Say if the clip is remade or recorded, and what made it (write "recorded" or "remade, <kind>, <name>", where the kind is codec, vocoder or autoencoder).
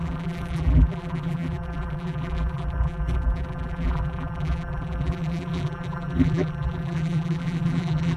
remade, vocoder, BigVGAN v2